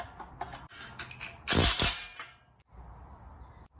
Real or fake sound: real